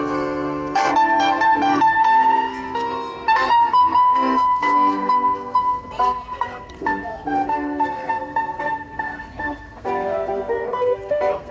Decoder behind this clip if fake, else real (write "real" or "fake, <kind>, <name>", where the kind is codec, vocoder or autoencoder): fake, codec, SNAC